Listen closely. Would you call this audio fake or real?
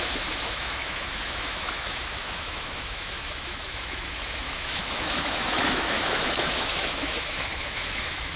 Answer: fake